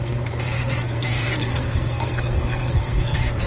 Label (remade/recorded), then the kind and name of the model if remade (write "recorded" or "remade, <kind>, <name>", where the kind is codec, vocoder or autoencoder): remade, codec, SNAC